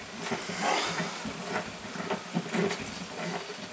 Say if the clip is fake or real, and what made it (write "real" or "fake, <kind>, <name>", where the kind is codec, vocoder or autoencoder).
real